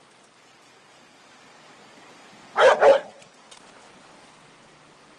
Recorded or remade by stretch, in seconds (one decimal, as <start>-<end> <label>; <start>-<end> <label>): 0.0-5.2 recorded